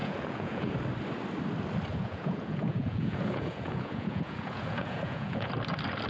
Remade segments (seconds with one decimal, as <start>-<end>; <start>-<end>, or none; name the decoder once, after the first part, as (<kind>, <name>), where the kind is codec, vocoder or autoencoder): 0.0-0.7 (vocoder, Vocos); 1.9-5.5